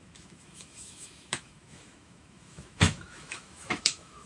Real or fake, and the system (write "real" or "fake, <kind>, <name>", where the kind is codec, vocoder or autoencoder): fake, autoencoder, DAC-VAE